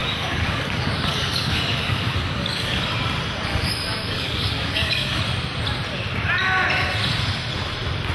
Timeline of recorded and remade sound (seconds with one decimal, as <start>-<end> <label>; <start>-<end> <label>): 0.0-2.8 remade; 2.8-3.5 recorded; 3.5-5.2 remade; 5.2-8.1 recorded